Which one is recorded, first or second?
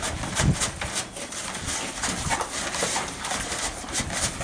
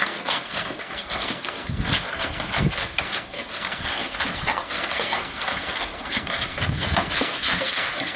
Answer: first